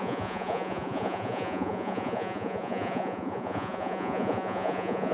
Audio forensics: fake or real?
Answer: fake